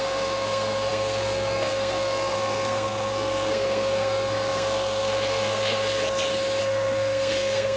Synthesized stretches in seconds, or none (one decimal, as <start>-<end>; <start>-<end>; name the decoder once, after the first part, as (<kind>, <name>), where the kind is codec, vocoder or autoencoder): 0.0-6.0 (codec, SNAC); 6.6-7.8